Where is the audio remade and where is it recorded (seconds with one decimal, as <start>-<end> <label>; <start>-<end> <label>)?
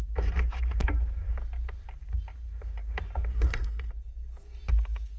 0.0-3.3 recorded; 3.3-3.9 remade; 3.9-5.2 recorded